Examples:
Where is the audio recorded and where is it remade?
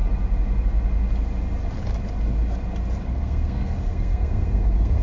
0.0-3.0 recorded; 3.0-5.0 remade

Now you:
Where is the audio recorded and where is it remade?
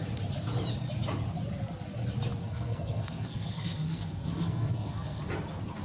0.0-2.4 recorded; 2.4-5.2 remade; 5.2-5.8 recorded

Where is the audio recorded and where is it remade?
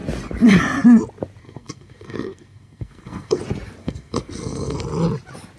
0.0-1.4 recorded; 1.4-3.4 remade; 3.4-3.8 recorded; 3.8-4.8 remade; 4.8-5.6 recorded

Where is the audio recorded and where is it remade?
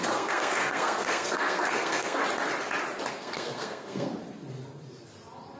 0.0-2.2 remade; 2.2-3.1 recorded; 3.1-4.1 remade; 4.1-5.6 recorded